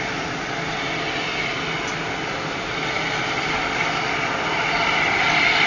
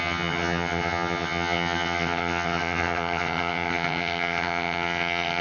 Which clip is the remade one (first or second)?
second